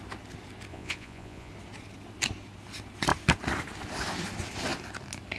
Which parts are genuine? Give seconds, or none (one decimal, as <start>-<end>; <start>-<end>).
0.0-0.7; 1.5-5.4